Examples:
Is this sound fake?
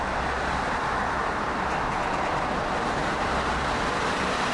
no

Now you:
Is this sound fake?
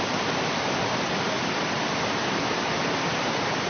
no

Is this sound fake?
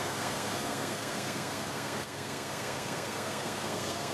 yes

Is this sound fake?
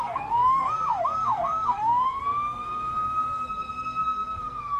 yes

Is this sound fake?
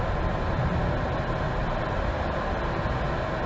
no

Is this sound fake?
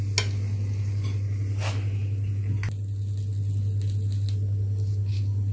no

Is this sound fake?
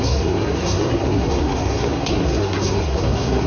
yes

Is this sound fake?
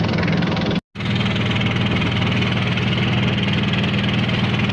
no